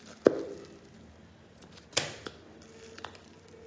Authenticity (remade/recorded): recorded